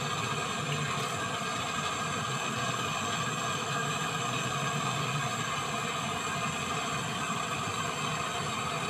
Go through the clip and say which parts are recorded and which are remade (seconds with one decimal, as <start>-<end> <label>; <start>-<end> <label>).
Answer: 0.0-3.6 recorded; 3.6-4.1 remade; 4.1-8.9 recorded